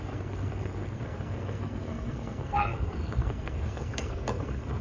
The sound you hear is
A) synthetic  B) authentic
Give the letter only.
A